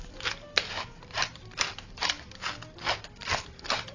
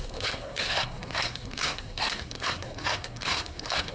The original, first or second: first